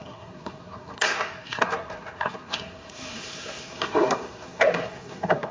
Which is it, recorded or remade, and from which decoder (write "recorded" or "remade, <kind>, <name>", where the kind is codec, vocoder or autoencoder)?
remade, codec, SNAC